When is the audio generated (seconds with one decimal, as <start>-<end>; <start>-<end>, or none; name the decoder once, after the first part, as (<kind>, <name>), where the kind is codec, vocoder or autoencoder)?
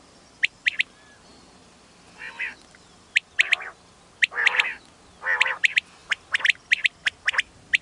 none